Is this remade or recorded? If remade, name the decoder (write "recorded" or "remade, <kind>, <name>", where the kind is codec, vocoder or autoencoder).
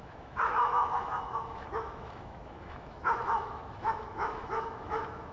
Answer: remade, autoencoder, DAC-VAE